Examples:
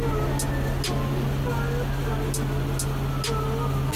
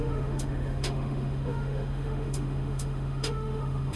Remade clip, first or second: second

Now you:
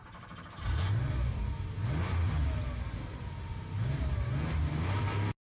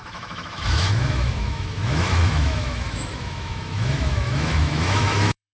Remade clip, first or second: second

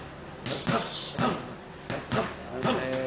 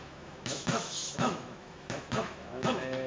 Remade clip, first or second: second